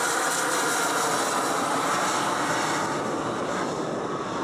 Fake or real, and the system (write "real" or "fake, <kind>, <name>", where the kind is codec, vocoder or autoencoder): real